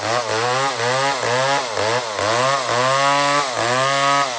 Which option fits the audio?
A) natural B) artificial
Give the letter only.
A